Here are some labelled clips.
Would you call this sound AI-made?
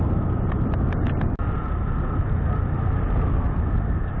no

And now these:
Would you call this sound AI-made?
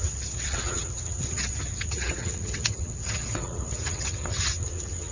yes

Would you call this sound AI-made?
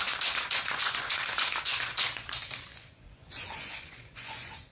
yes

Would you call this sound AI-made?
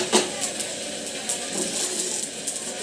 no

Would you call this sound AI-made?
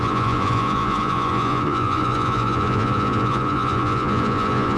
yes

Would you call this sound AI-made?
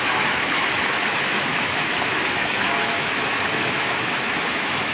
yes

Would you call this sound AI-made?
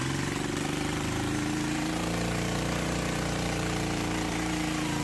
yes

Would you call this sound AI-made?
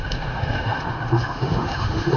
yes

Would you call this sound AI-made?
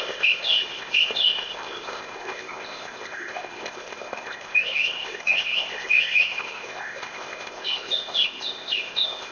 yes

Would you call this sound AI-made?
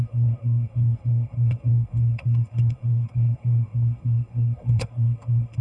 yes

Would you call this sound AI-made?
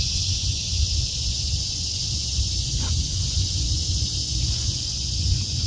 yes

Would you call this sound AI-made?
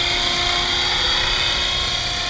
no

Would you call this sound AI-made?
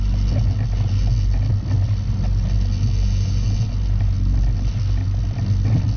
no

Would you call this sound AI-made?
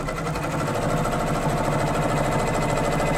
no